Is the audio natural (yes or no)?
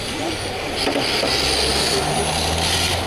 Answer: yes